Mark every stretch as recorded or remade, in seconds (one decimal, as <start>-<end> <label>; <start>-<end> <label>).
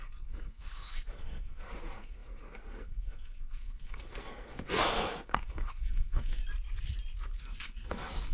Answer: 0.0-6.4 remade; 6.4-7.4 recorded; 7.4-8.3 remade